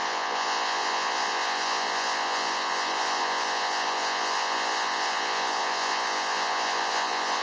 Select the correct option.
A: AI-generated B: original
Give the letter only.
A